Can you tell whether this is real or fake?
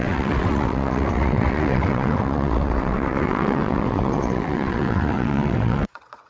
fake